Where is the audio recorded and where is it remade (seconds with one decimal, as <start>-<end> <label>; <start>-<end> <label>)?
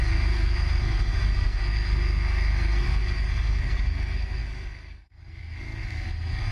0.0-6.5 remade